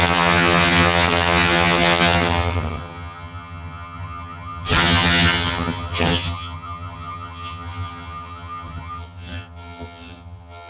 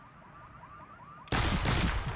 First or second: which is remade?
first